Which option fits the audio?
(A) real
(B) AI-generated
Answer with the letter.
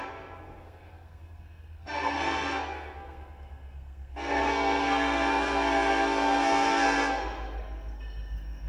B